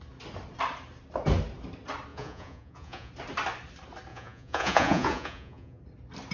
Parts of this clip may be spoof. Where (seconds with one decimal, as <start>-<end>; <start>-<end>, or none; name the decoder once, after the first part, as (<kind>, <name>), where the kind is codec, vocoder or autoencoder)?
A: 2.1-3.1 (vocoder, Vocos); 4.1-5.8